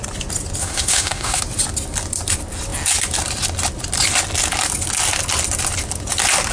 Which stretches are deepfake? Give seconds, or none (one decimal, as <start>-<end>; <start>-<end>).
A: 0.6-1.4